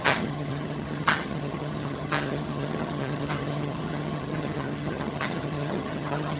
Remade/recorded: remade